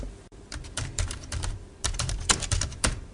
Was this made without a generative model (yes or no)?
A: no